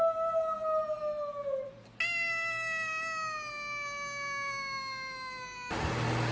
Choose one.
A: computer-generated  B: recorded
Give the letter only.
B